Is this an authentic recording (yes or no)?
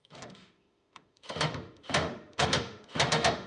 no